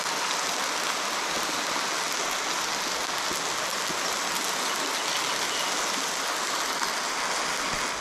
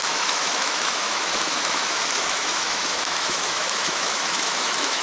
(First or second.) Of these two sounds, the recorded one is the first